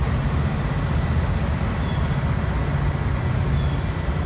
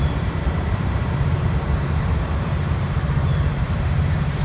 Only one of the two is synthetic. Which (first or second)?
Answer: second